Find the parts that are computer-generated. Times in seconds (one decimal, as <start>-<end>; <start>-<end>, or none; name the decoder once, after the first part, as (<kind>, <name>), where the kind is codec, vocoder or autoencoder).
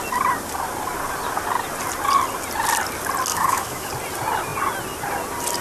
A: 3.3-3.9 (autoencoder, DAC-VAE)